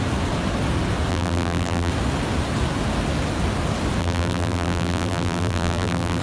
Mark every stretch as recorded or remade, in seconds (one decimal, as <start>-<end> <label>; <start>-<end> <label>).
0.0-1.1 recorded; 1.1-1.9 remade; 1.9-4.0 recorded; 4.0-6.2 remade